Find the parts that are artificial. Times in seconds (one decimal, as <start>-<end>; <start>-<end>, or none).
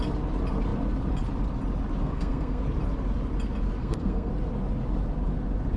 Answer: 2.0-2.6; 3.8-4.3